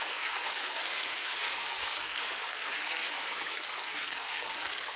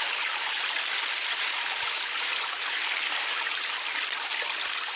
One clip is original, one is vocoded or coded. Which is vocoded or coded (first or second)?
first